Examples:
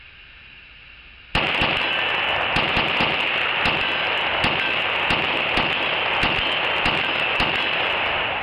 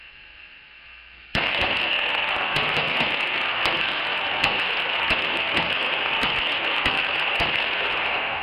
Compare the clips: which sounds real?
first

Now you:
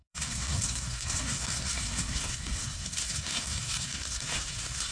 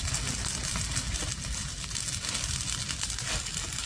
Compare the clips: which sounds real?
second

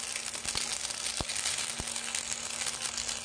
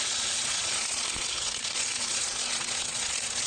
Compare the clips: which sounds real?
first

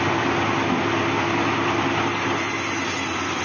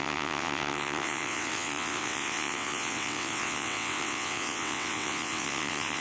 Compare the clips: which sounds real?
first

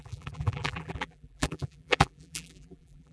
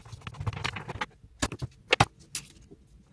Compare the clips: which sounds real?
second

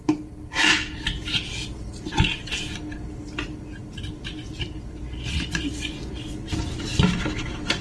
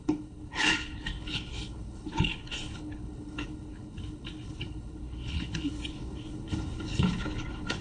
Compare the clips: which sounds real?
first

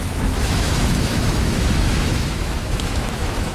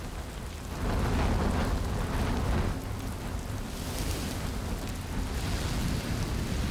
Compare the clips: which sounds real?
second